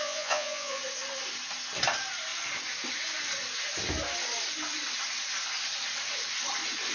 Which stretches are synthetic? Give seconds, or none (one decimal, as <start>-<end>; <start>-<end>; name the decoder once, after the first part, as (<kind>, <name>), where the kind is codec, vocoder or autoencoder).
0.0-0.8 (vocoder, Vocos)